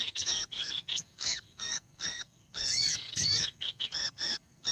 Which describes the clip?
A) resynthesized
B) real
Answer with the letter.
A